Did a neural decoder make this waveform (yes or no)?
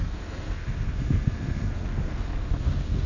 yes